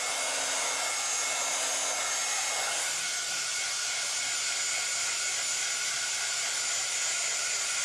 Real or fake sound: real